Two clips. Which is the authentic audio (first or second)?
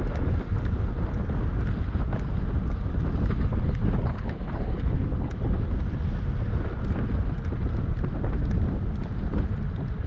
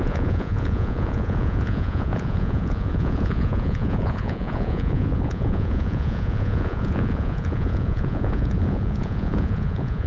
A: first